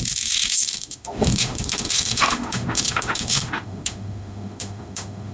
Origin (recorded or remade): remade